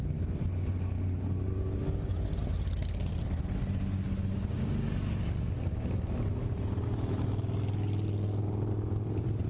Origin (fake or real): real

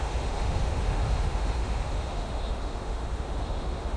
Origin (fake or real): fake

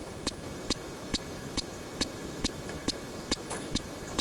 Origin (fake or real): fake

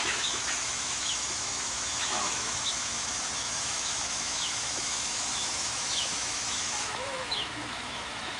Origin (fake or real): fake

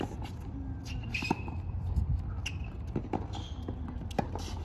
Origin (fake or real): real